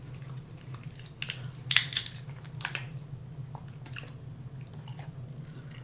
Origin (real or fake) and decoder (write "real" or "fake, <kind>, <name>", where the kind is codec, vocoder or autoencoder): real